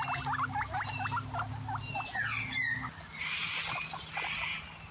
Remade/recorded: recorded